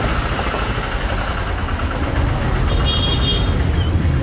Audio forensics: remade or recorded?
recorded